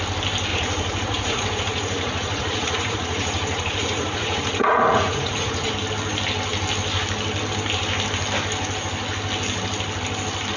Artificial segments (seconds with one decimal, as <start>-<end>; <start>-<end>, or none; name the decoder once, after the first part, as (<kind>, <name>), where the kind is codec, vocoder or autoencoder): 0.5-5.7 (vocoder, Vocos)